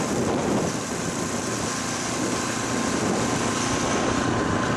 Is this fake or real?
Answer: fake